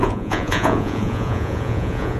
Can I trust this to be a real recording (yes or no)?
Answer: no